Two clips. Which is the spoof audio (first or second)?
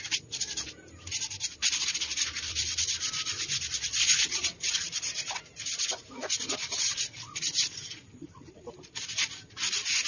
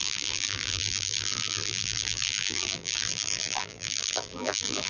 second